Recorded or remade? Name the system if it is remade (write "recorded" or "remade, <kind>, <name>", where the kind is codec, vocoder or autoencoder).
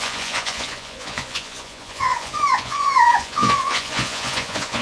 remade, vocoder, Vocos